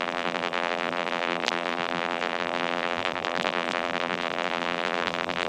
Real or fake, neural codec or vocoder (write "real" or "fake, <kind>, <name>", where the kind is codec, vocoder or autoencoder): fake, vocoder, BigVGAN v2